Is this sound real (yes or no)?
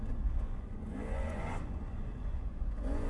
no